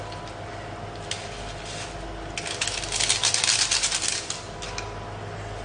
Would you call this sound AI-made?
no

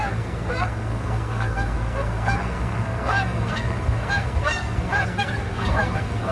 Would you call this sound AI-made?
yes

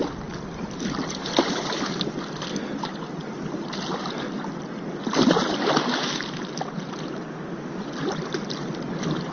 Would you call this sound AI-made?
no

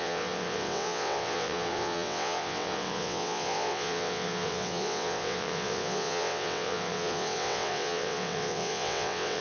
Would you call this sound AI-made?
yes